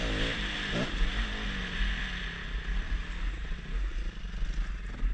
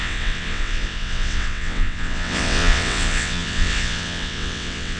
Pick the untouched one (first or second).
first